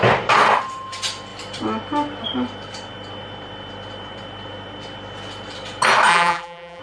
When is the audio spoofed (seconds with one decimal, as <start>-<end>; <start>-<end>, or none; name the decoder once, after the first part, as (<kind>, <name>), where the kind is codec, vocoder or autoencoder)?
6.1-6.8 (vocoder, BigVGAN v2)